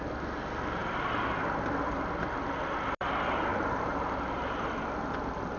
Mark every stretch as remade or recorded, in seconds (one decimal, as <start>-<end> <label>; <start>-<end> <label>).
0.0-3.5 recorded; 3.5-4.7 remade; 4.7-5.6 recorded